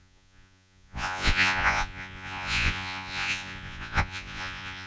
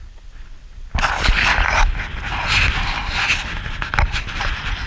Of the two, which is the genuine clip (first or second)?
second